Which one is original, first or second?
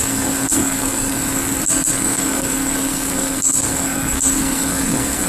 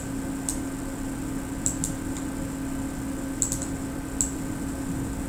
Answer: second